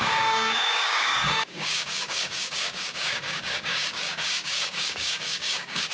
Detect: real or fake fake